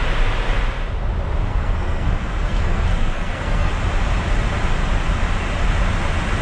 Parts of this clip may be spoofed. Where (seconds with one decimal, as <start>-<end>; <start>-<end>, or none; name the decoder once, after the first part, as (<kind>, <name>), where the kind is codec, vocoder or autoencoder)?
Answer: 1.5-3.7 (codec, SNAC)

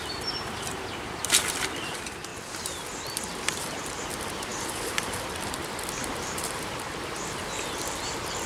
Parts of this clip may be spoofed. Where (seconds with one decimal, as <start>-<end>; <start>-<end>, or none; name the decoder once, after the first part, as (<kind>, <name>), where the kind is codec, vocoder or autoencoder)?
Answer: 0.0-2.3 (vocoder, BigVGAN v2); 3.2-8.5

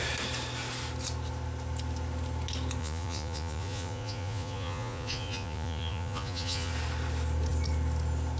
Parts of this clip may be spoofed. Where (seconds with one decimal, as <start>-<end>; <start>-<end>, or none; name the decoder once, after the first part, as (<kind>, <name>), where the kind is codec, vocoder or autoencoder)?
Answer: 2.8-6.7 (vocoder, Vocos)

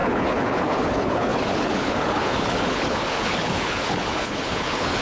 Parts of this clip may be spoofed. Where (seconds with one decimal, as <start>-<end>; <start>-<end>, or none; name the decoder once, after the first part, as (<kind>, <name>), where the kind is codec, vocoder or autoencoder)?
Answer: 0.0-5.0 (codec, HILCodec)